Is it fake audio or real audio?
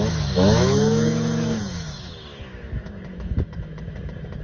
fake